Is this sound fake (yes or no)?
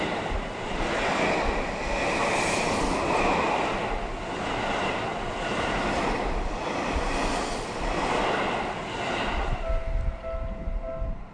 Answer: no